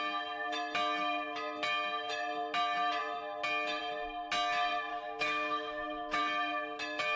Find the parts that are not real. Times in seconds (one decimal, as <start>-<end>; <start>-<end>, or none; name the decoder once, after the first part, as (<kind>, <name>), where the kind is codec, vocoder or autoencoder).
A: 4.9-6.2 (autoencoder, DAC-VAE)